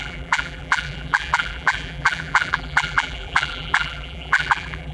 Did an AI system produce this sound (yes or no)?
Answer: yes